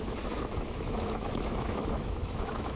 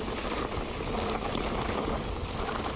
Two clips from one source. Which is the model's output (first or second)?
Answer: first